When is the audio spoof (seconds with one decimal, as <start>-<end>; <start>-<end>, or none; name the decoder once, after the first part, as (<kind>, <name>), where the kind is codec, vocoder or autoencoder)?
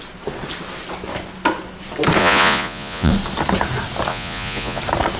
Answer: 2.2-3.1 (vocoder, Vocos); 4.1-4.8